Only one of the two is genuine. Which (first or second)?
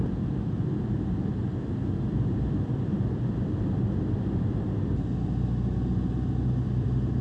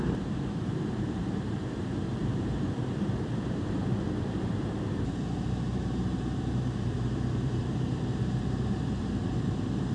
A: first